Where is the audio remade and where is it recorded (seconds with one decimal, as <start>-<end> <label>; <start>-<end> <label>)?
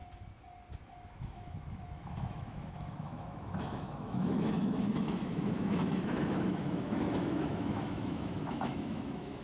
0.0-1.1 recorded; 1.1-9.4 remade